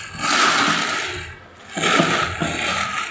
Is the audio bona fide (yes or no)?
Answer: yes